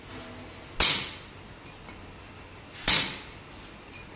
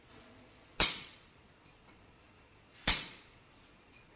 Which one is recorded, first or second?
first